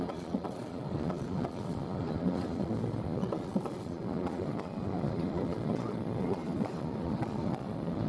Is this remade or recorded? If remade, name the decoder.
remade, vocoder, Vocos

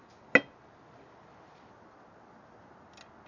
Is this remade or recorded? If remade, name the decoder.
recorded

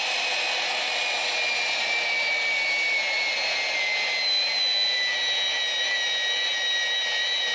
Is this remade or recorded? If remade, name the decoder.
recorded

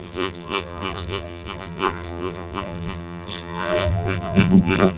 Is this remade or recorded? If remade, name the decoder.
remade, vocoder, BigVGAN v2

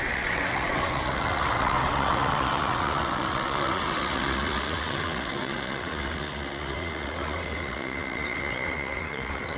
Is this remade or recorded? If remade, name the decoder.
remade, vocoder, WaveNeXt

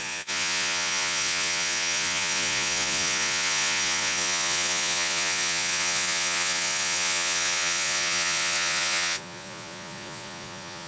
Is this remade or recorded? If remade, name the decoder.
remade, vocoder, Vocos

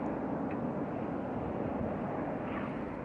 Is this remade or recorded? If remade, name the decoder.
recorded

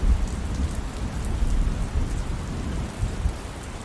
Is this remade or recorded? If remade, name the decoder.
recorded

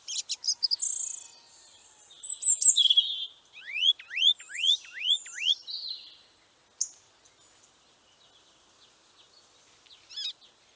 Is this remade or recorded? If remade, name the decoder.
recorded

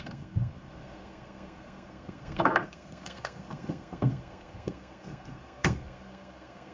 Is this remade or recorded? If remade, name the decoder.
remade, codec, SNAC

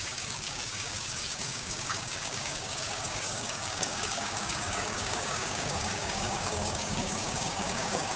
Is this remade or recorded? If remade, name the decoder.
remade, codec, DAC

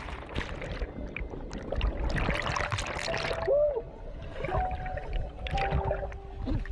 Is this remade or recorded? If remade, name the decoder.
recorded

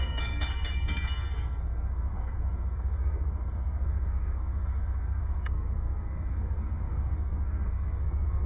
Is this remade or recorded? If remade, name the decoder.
remade, codec, SNAC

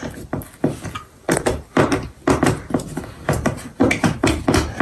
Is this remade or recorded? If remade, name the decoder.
recorded